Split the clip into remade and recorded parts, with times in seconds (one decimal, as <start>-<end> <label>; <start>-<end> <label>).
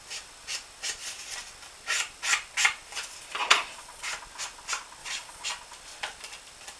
0.0-3.4 recorded; 3.4-4.1 remade; 4.1-5.0 recorded; 5.0-5.5 remade; 5.5-6.8 recorded